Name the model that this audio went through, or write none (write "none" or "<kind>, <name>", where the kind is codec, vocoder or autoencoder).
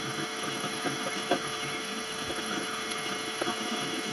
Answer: autoencoder, DAC-VAE